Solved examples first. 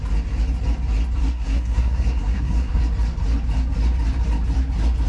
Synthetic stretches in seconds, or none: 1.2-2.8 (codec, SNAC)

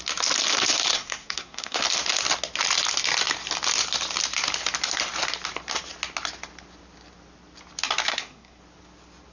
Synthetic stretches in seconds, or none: 0.9-1.8 (codec, SNAC); 8.1-8.6

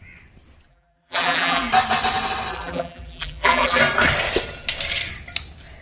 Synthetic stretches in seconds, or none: 0.7-1.7 (vocoder, BigVGAN v2); 2.5-3.8

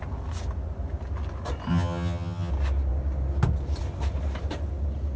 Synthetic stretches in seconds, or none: 1.7-2.5 (vocoder, HiFi-GAN)

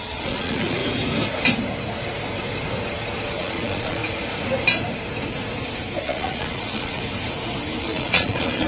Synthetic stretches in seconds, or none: 0.0-0.8 (vocoder, Vocos); 3.4-4.0; 6.0-7.0; 7.8-8.7

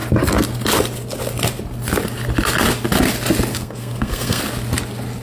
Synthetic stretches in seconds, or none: 3.5-4.4 (codec, SNAC)